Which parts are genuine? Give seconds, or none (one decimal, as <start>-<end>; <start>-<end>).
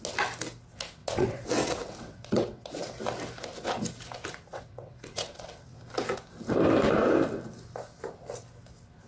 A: 0.0-1.0; 2.8-4.5; 5.8-9.1